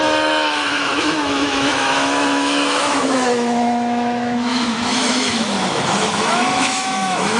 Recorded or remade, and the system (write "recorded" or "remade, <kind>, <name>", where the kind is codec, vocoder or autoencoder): remade, autoencoder, DAC-VAE